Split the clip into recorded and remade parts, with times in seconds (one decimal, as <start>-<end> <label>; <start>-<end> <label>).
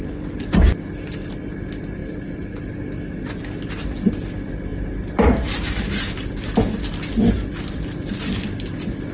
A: 0.0-2.0 recorded; 2.0-2.6 remade; 2.6-4.7 recorded; 4.7-6.0 remade; 6.0-9.1 recorded